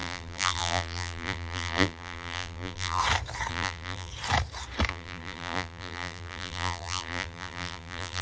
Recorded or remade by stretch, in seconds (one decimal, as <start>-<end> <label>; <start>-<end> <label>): 0.0-3.0 remade; 3.0-3.5 recorded; 3.5-4.1 remade; 4.1-4.9 recorded; 4.9-8.2 remade